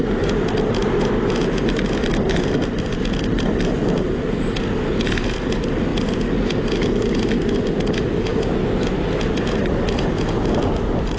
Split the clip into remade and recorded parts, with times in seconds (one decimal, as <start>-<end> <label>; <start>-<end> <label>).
0.0-11.2 recorded